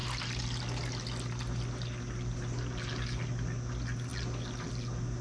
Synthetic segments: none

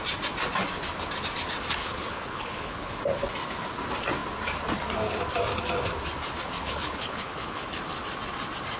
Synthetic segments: 1.8-3.0 (codec, HILCodec); 6.6-7.8

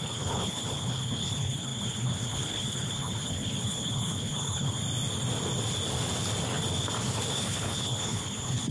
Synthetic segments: 0.0-4.8 (codec, HILCodec); 7.3-8.7

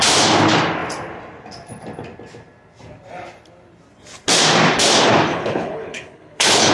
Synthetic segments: 5.3-6.7 (codec, HILCodec)

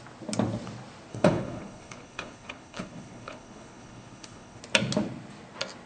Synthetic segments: 1.1-4.6 (codec, HILCodec)

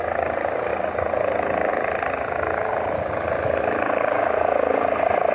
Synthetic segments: none